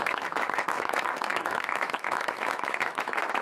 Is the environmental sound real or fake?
fake